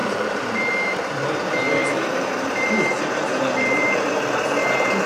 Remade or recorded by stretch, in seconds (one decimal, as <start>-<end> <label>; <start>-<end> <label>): 0.0-1.1 remade; 1.1-1.8 recorded; 1.8-2.7 remade; 2.7-3.3 recorded; 3.3-4.1 remade; 4.1-5.1 recorded